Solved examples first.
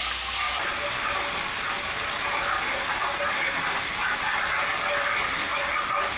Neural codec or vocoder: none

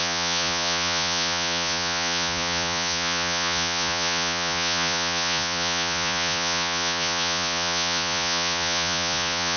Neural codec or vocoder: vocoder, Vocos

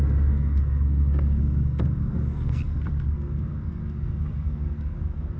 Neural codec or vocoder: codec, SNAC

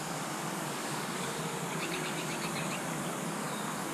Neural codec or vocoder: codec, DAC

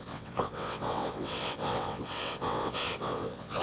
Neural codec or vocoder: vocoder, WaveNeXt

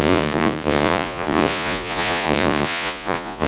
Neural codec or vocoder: vocoder, Vocos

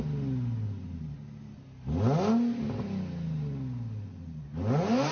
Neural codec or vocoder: none